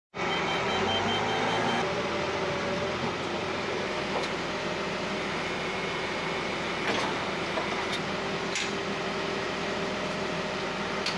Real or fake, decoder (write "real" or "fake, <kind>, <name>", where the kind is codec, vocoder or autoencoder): real